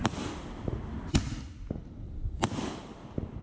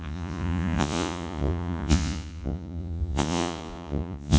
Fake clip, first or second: second